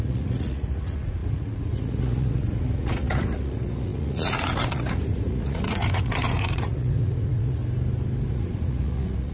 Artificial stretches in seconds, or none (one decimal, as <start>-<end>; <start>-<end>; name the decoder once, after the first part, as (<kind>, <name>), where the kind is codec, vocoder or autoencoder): 0.0-7.6 (vocoder, Vocos); 8.3-9.3